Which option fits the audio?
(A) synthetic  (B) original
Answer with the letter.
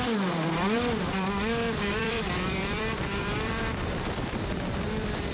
A